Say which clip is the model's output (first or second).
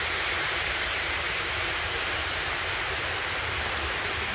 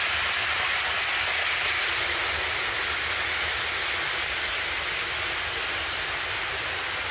first